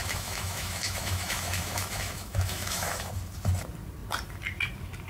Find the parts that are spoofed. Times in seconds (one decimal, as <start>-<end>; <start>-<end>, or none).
0.0-3.1